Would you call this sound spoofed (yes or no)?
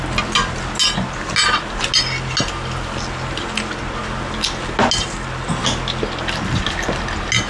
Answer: no